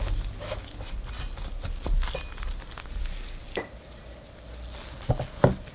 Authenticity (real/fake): real